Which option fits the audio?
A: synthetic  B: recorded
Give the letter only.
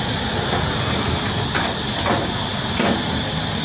B